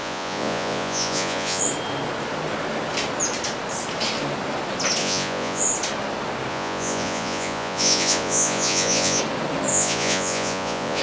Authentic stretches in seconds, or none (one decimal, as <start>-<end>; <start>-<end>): 1.6-5.0; 5.6-6.5; 9.2-9.7